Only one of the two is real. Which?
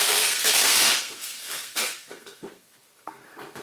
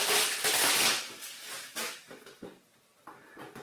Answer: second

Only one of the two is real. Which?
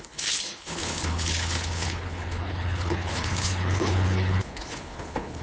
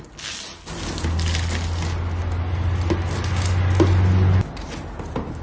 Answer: second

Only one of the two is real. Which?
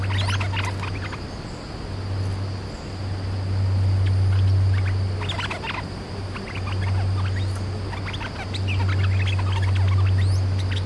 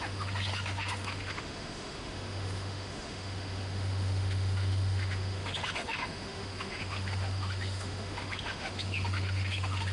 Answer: first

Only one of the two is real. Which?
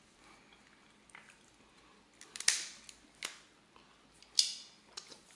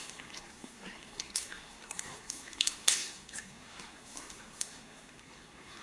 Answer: first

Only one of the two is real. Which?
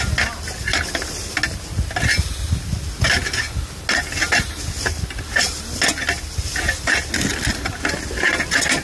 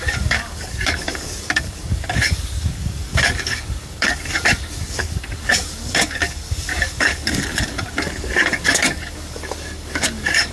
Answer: first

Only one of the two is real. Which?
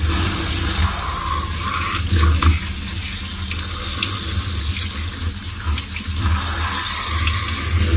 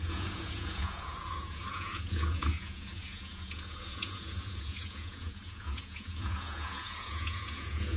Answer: first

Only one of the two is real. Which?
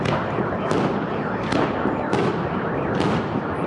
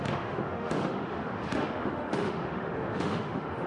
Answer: first